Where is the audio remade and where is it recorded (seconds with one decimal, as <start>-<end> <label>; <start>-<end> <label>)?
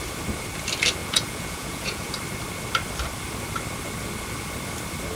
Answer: 0.0-1.0 recorded; 1.0-2.1 remade; 2.1-5.2 recorded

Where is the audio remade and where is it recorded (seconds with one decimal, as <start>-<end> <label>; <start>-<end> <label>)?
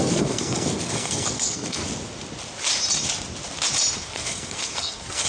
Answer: 0.0-1.8 remade; 1.8-4.0 recorded; 4.0-5.3 remade